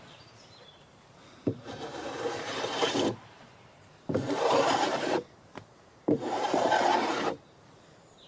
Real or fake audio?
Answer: fake